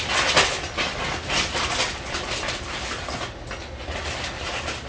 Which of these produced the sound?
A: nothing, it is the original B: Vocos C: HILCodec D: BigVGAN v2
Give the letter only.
A